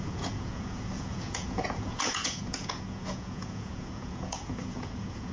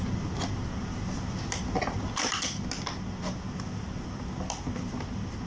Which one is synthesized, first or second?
first